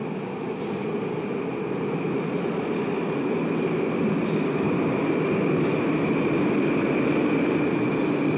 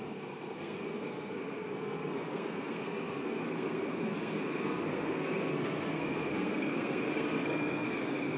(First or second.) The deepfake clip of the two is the second